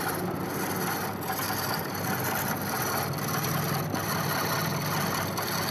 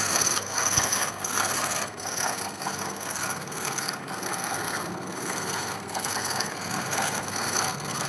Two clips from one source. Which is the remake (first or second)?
second